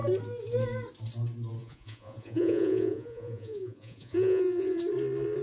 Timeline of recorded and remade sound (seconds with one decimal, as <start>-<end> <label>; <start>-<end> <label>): 0.0-1.6 recorded; 1.6-4.8 remade; 4.8-5.4 recorded